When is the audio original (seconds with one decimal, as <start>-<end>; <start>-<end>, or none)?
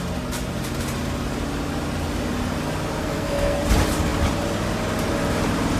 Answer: 0.0-3.0; 3.6-5.8